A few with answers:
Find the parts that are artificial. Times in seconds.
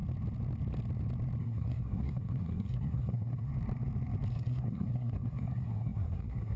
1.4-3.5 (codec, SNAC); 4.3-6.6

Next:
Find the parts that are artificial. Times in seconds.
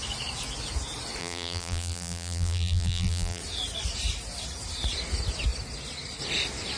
1.2-3.4 (vocoder, BigVGAN v2)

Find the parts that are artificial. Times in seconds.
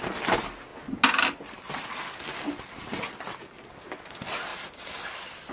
none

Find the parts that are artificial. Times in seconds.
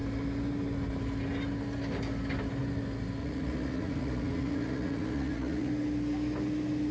3.2-5.7 (vocoder, Vocos)